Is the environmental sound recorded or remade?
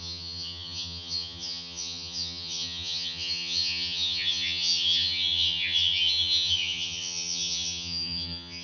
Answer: remade